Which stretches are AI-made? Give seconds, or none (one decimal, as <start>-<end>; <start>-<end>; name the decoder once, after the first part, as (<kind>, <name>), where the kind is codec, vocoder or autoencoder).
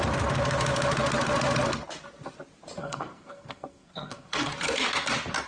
2.8-4.5 (codec, SNAC)